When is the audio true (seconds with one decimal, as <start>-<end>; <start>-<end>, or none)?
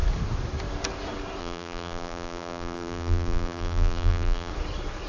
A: 0.0-1.4; 4.5-5.1